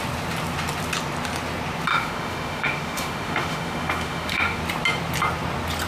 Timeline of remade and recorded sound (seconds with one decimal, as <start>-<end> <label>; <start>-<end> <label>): 0.0-1.9 recorded; 1.9-4.6 remade; 4.6-5.9 recorded